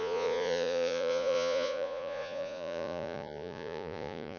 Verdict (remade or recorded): remade